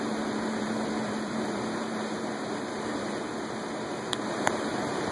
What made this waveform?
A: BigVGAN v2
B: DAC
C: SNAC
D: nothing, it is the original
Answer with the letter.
A